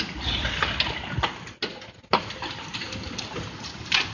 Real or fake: real